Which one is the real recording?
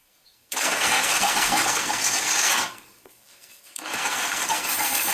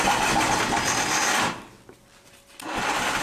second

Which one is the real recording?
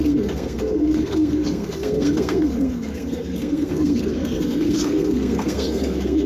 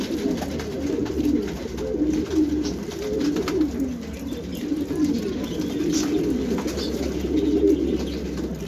second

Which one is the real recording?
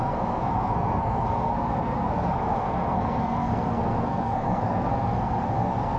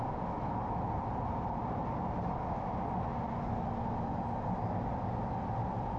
second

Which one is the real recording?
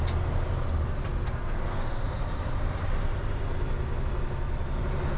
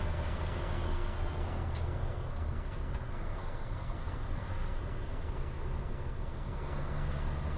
first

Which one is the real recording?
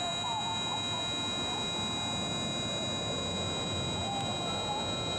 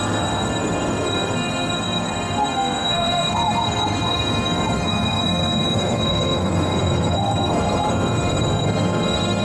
first